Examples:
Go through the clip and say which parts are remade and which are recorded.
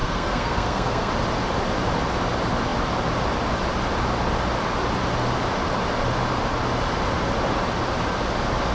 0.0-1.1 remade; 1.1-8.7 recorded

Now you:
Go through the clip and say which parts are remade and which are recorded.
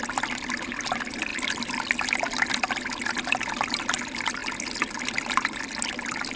0.0-6.4 recorded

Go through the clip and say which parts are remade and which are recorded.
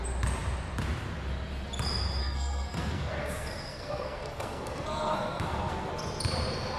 0.0-2.2 recorded; 2.2-5.9 remade; 5.9-6.8 recorded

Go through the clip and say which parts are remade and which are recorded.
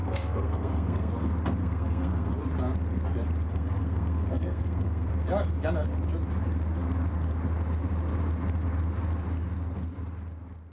0.0-1.1 remade; 1.1-1.6 recorded; 1.6-2.3 remade; 2.3-3.5 recorded; 3.5-5.1 remade; 5.1-10.7 recorded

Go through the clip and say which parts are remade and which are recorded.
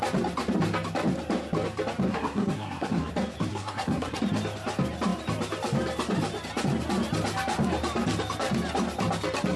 0.0-2.1 recorded; 2.1-3.1 remade; 3.1-3.5 recorded; 3.5-4.2 remade; 4.2-9.6 recorded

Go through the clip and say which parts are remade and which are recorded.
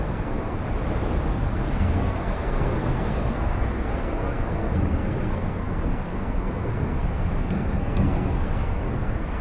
0.0-0.6 remade; 0.6-1.3 recorded; 1.3-9.4 remade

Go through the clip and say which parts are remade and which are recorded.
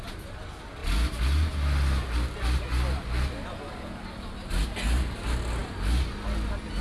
0.0-6.8 recorded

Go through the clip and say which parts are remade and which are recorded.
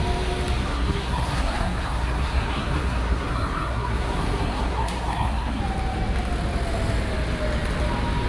0.0-0.6 recorded; 0.6-5.6 remade; 5.6-8.3 recorded